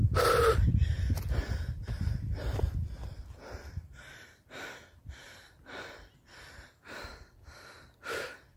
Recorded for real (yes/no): no